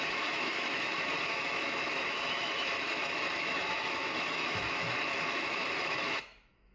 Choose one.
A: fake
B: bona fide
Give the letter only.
A